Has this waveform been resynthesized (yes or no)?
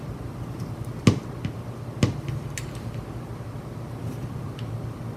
no